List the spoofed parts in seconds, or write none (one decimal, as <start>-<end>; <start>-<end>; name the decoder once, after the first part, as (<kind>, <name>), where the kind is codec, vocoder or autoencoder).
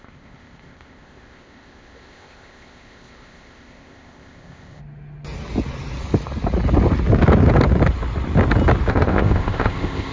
0.0-4.8 (codec, ZipCodec); 8.9-10.1